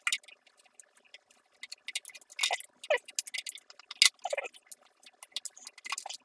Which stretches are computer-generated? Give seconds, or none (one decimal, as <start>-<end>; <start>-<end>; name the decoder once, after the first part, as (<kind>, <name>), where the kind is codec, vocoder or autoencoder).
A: none